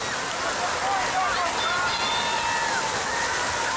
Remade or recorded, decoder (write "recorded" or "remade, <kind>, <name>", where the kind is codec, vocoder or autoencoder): recorded